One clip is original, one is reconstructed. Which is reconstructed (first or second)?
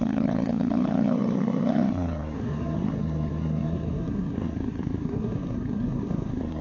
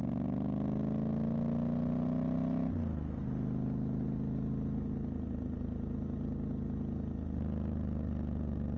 first